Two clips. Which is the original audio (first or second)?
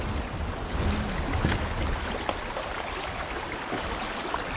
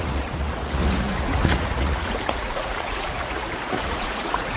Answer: first